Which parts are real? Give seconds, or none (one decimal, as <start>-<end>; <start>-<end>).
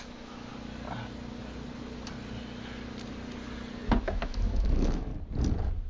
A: 0.5-4.0; 5.1-5.9